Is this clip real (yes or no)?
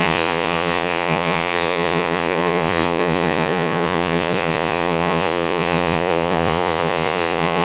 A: no